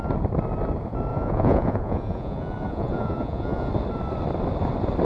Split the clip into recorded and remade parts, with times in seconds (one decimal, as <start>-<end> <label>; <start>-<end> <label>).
0.0-1.1 recorded; 1.1-3.7 remade; 3.7-5.0 recorded